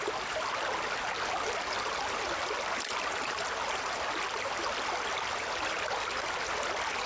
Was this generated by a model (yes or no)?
no